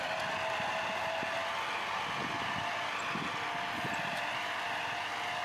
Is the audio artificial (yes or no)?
no